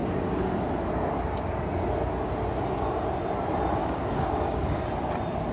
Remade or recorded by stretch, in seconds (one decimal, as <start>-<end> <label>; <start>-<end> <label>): 0.0-3.8 recorded; 3.8-4.8 remade; 4.8-5.5 recorded